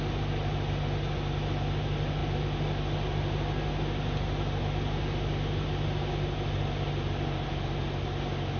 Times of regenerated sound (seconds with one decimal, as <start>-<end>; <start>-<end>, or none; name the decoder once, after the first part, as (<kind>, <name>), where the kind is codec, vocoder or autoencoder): none